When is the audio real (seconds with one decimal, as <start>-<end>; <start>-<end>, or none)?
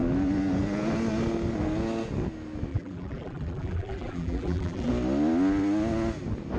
0.0-2.7; 4.9-6.6